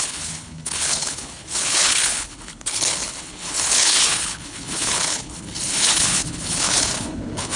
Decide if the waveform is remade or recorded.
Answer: remade